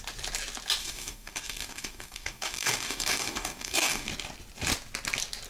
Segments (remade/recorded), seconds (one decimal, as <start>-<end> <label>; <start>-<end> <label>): 0.0-0.8 recorded; 0.8-4.1 remade; 4.1-5.5 recorded